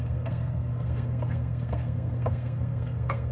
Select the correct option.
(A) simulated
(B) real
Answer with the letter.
A